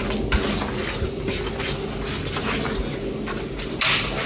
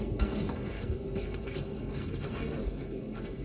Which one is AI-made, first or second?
second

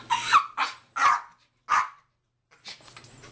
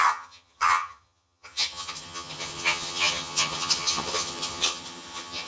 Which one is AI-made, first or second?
second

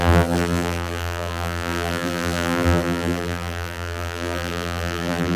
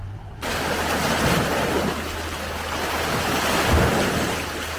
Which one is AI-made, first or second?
first